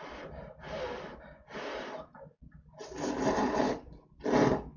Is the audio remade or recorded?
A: recorded